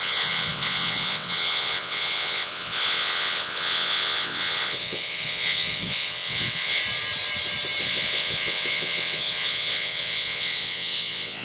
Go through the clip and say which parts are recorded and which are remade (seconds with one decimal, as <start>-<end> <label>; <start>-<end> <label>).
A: 0.0-6.8 remade; 6.8-7.8 recorded; 7.8-11.4 remade